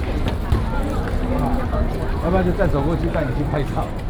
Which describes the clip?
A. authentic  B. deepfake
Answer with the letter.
A